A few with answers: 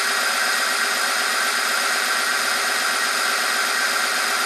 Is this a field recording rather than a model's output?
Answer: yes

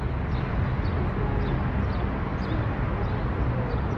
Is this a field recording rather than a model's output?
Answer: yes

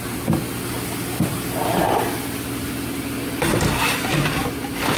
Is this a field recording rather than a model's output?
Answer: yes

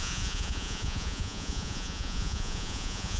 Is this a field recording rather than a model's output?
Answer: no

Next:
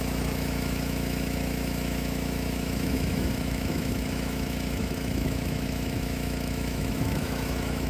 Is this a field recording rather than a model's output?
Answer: no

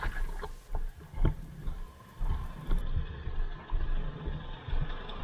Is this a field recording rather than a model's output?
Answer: yes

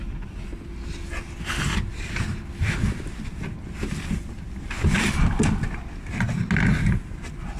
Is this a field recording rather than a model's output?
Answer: yes